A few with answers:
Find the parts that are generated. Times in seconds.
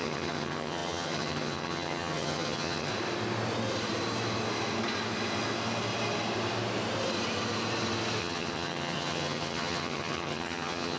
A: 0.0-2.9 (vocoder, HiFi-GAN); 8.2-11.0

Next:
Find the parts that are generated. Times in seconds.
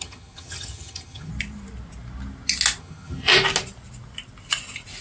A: 0.0-1.3 (vocoder, HiFi-GAN); 2.8-3.3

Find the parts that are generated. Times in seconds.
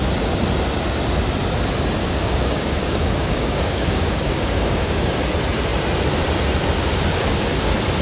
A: 2.0-5.1 (codec, DAC)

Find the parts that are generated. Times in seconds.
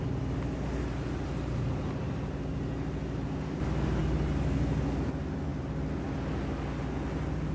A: none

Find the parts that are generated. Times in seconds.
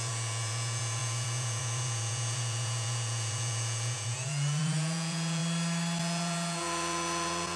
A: 0.0-5.4 (vocoder, Vocos); 6.0-7.6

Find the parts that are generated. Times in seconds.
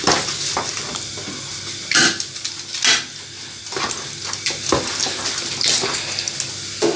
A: none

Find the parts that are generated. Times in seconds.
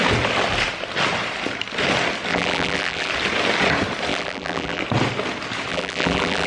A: 2.3-3.1 (vocoder, BigVGAN v2); 4.1-4.8; 5.7-6.5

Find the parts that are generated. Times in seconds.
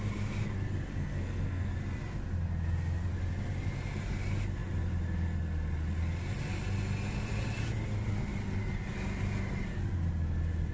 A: 0.9-1.7 (codec, SNAC)